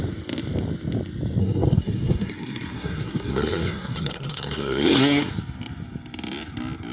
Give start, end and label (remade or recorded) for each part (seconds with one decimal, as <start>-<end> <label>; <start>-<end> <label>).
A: 0.0-1.4 recorded; 1.4-5.3 remade; 5.3-6.9 recorded

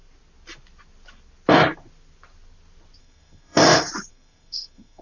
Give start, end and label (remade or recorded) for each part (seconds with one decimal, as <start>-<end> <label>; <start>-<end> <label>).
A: 0.0-3.0 recorded; 3.0-3.6 remade; 3.6-4.1 recorded; 4.1-5.0 remade

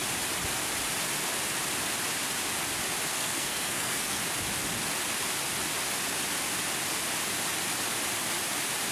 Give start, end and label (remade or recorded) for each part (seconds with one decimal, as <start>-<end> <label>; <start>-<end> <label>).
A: 0.0-3.1 recorded; 3.1-4.2 remade; 4.2-8.9 recorded

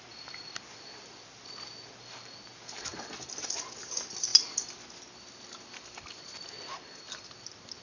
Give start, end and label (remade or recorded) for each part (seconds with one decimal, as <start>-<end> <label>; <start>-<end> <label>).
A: 0.0-7.8 recorded